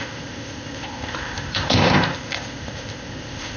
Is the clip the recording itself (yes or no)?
no